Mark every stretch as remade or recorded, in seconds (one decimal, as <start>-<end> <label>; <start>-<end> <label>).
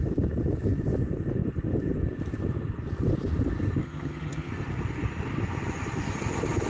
0.0-3.8 recorded; 3.8-4.5 remade; 4.5-6.7 recorded